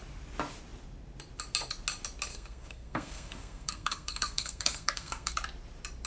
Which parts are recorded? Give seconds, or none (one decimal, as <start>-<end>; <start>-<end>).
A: 0.0-2.3; 5.3-6.1